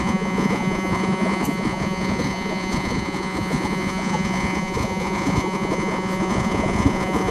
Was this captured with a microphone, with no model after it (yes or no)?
no